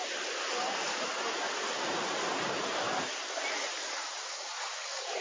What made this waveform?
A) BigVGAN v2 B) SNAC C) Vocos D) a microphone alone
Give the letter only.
D